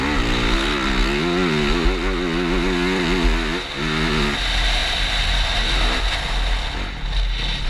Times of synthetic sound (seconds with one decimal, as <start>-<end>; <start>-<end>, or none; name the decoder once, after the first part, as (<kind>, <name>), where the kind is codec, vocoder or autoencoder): 4.8-5.5 (vocoder, BigVGAN v2)